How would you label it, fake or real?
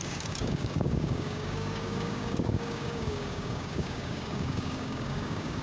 fake